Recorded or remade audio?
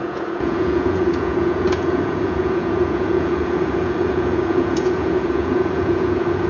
remade